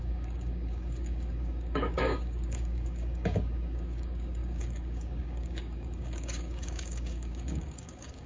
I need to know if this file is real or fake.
fake